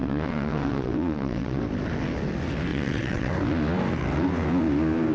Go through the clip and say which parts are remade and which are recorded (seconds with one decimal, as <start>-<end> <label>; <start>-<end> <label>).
0.0-1.6 remade; 1.6-2.7 recorded; 2.7-3.3 remade; 3.3-5.1 recorded